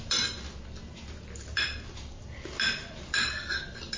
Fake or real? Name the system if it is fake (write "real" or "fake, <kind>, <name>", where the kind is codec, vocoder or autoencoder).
fake, vocoder, BigVGAN v2